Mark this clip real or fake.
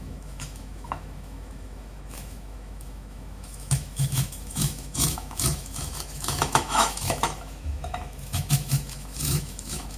fake